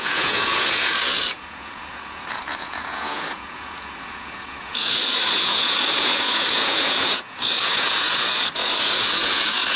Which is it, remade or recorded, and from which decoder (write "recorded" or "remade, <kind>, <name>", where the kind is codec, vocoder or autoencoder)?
remade, vocoder, Vocos